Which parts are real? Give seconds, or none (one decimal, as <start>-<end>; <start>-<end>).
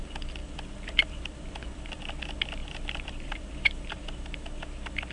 0.0-0.4; 2.0-2.6; 4.2-5.1